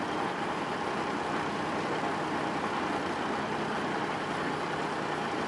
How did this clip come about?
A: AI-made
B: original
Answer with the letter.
B